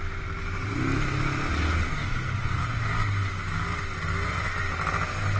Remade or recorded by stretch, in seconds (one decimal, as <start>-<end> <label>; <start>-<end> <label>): 0.0-1.9 recorded; 1.9-2.6 remade; 2.6-5.4 recorded